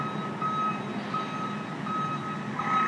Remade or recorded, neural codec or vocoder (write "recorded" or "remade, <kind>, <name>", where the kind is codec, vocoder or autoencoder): recorded